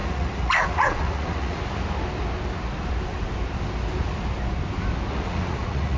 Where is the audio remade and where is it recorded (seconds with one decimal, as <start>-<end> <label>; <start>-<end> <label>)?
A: 0.0-1.6 remade; 1.6-5.1 recorded; 5.1-6.0 remade